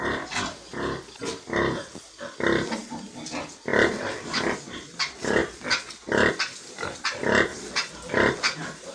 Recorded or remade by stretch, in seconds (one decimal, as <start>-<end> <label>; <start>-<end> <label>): 0.0-8.9 recorded